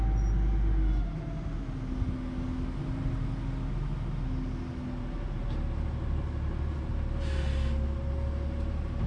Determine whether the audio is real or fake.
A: real